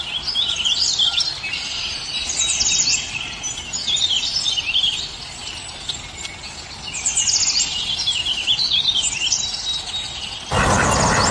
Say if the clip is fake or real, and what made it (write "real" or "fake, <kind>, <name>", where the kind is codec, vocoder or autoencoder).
real